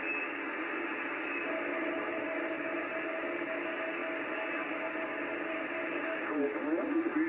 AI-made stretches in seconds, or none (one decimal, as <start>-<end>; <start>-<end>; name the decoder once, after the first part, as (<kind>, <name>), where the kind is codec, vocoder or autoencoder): 1.7-2.8 (autoencoder, DAC-VAE)